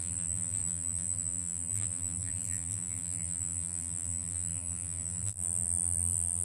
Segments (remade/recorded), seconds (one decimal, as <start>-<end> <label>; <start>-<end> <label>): 0.0-6.4 remade